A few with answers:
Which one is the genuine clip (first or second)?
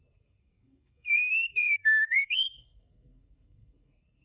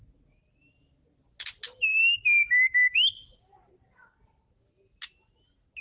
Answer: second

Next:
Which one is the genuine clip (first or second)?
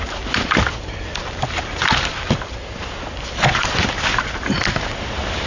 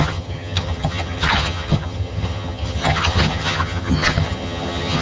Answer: first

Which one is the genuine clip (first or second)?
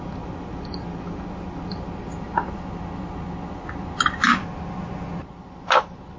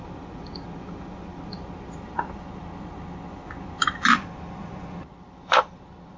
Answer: first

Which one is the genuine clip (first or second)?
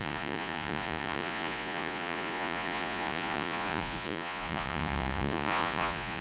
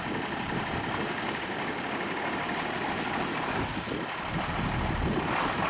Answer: second